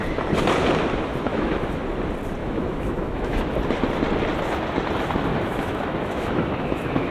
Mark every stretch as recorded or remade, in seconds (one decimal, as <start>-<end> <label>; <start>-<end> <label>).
0.0-1.3 recorded; 1.3-1.8 remade; 1.8-2.4 recorded; 2.4-3.4 remade; 3.4-5.3 recorded; 5.3-7.1 remade